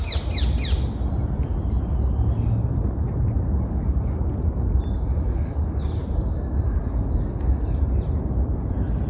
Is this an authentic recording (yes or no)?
yes